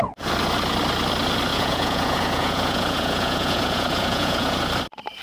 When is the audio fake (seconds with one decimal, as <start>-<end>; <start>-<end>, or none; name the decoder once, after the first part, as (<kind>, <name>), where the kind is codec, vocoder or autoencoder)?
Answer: 1.5-4.6 (vocoder, Vocos)